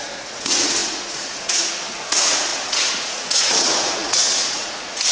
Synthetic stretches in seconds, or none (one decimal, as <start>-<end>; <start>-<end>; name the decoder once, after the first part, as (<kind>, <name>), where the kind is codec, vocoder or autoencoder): 0.0-5.1 (vocoder, Vocos)

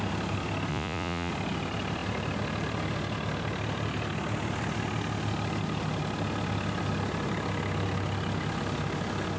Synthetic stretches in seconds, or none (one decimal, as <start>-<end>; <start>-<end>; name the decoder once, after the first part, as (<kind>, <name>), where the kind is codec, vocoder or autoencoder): 0.7-1.3 (vocoder, Vocos)

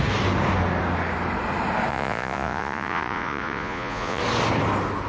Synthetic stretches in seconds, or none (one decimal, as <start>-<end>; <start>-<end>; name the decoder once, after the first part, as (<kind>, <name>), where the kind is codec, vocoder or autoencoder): 1.9-4.2 (vocoder, Vocos)

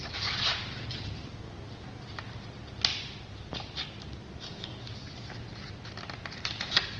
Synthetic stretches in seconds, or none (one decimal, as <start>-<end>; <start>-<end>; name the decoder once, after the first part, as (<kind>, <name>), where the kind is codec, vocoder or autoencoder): none

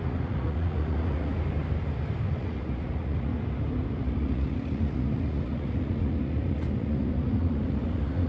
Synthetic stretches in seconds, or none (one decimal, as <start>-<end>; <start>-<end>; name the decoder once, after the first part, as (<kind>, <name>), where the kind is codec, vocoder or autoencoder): 0.0-1.3 (vocoder, Vocos); 2.4-3.3; 3.9-8.3

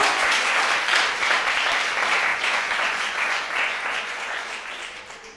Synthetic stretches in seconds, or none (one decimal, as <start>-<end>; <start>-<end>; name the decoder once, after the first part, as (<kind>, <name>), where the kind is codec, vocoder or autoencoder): 0.0-0.6 (vocoder, Vocos); 2.3-5.0

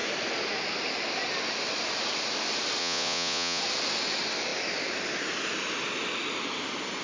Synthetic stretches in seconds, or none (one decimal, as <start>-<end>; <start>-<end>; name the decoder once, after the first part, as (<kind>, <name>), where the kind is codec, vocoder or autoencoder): 2.8-3.6 (vocoder, Vocos)